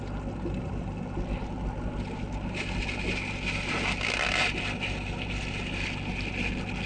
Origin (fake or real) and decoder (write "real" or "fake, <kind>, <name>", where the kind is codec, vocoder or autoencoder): real